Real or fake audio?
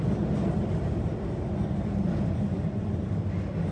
real